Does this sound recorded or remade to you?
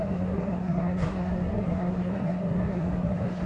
remade